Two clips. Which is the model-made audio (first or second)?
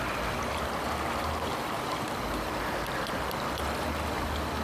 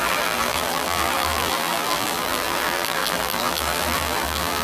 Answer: second